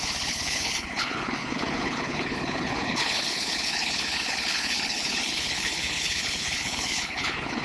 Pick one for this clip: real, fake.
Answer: fake